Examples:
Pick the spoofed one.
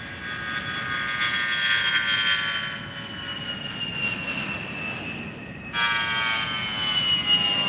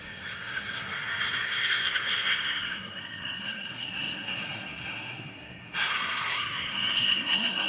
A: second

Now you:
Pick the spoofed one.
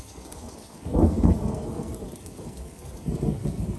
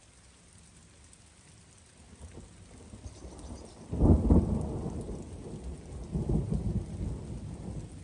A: first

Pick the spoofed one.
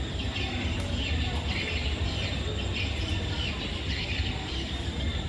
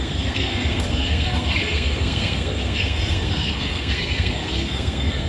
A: second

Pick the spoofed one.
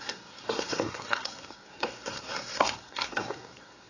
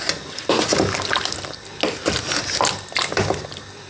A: first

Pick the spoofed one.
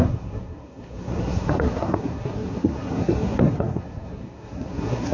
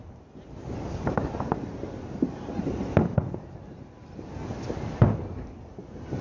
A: first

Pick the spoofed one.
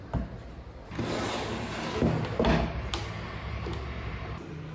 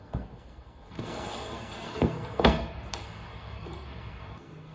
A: second